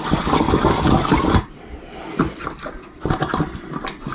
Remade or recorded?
remade